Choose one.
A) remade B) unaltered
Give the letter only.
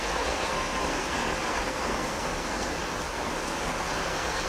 A